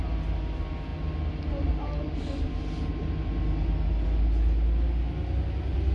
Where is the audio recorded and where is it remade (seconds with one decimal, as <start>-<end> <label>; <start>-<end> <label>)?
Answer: 0.0-5.9 recorded